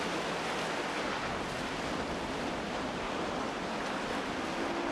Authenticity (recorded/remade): recorded